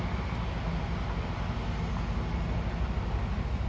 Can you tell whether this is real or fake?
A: real